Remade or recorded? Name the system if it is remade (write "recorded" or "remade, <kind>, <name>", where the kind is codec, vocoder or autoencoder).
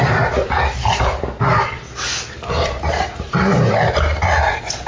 recorded